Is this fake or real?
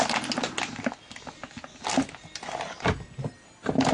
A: real